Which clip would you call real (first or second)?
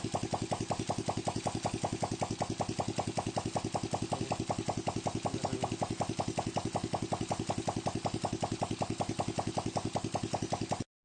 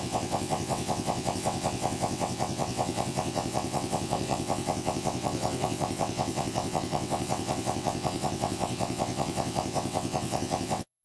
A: first